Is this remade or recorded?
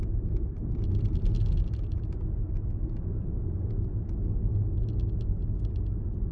recorded